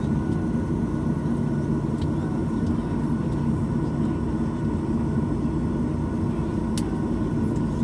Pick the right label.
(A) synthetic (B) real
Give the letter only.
B